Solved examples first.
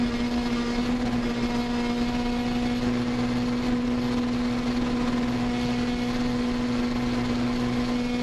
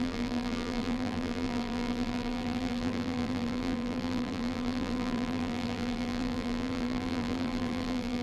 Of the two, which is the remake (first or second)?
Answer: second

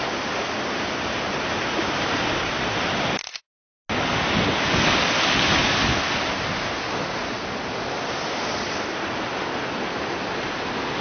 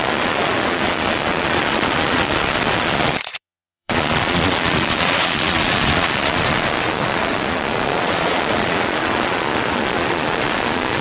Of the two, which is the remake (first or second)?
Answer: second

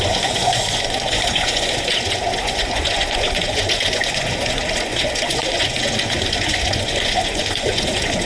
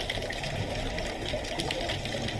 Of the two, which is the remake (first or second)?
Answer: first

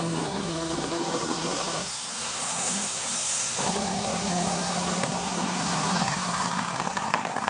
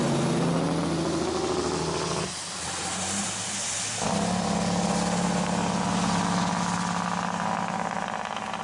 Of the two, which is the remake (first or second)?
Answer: first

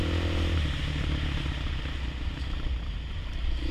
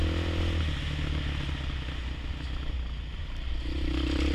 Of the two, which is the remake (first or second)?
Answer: first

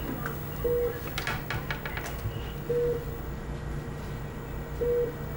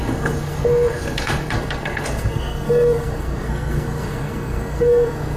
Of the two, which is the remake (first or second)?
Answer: second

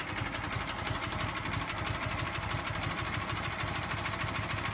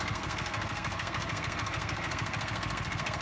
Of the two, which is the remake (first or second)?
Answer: second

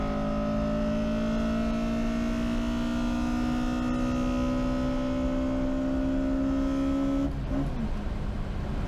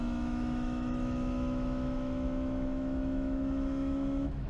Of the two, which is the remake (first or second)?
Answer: second